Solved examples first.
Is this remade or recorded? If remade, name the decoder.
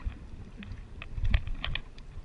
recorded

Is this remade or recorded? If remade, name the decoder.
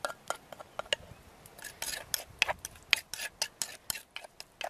recorded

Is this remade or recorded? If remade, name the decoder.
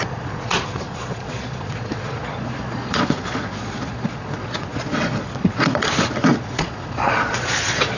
remade, vocoder, Vocos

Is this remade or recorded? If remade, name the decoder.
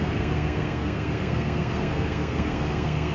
remade, codec, SNAC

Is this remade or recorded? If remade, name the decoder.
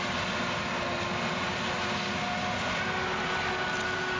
recorded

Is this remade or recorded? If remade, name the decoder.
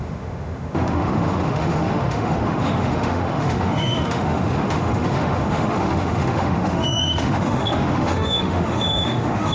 remade, autoencoder, DAC-VAE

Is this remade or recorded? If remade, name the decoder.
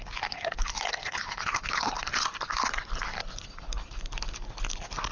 recorded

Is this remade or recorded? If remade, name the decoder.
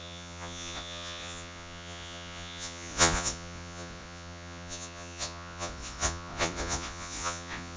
remade, vocoder, Vocos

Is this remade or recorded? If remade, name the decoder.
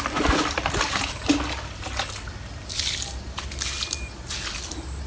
recorded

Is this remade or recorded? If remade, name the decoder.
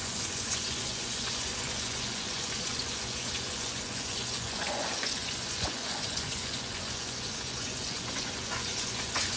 remade, vocoder, Vocos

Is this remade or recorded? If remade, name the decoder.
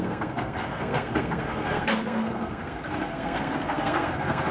remade, codec, SNAC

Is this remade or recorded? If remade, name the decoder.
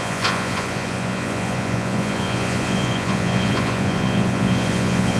remade, vocoder, Vocos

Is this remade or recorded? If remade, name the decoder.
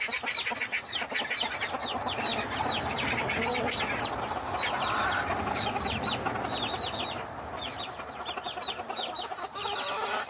recorded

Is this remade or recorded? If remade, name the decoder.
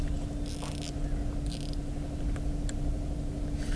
recorded